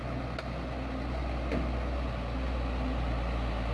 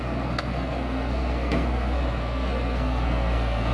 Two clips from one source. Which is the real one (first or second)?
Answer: first